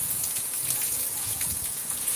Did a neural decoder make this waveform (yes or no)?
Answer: yes